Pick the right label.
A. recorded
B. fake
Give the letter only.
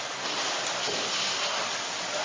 A